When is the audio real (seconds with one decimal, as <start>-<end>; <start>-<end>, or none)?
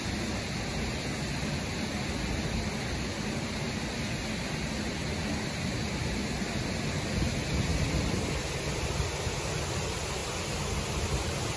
0.0-11.6